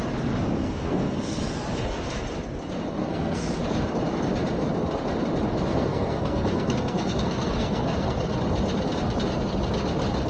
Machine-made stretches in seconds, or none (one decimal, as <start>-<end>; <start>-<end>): 0.6-1.5; 3.0-3.6; 5.7-8.3